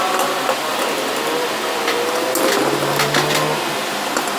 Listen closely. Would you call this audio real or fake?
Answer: real